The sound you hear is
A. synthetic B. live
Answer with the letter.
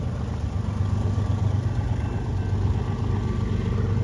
B